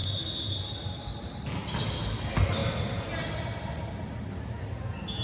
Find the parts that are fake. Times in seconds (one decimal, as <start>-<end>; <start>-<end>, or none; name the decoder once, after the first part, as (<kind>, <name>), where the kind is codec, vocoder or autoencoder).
none